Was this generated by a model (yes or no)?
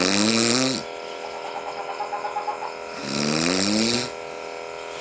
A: no